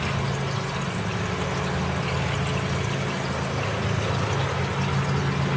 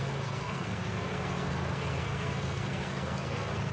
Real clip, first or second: first